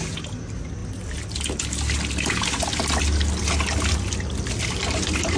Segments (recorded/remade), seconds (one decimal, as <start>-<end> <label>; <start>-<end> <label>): 0.0-5.4 recorded